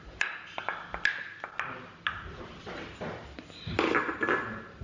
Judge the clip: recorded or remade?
recorded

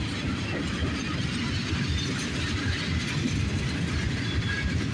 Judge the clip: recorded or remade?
recorded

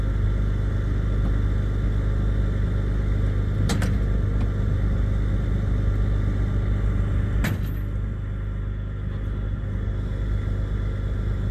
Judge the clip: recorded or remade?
recorded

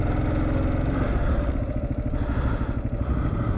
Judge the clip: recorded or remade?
recorded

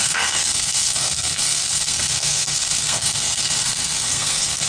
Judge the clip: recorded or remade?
remade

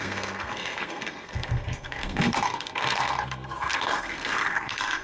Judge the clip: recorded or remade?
remade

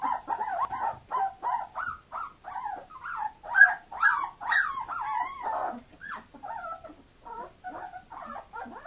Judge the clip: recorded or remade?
recorded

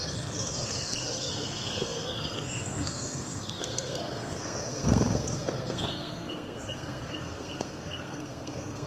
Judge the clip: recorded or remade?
remade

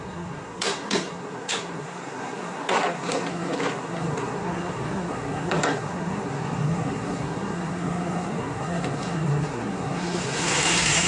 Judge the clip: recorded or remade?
remade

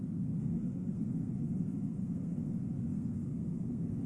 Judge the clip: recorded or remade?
remade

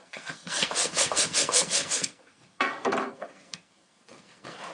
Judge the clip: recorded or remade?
remade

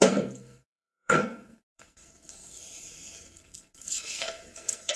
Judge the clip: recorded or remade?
remade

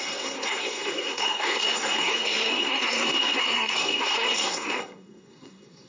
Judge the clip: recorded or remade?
remade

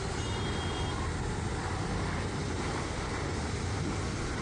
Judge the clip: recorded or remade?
recorded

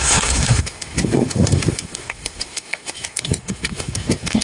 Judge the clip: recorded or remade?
remade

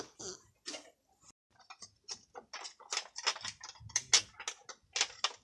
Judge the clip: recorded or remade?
recorded